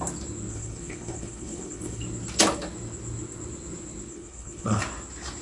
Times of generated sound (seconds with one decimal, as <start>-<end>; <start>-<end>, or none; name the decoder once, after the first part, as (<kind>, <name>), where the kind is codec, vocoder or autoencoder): 0.5-2.0 (codec, HILCodec); 4.1-4.8